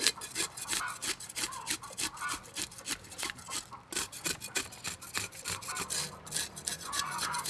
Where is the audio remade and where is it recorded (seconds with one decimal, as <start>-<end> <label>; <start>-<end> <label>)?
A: 0.0-6.7 recorded; 6.7-7.5 remade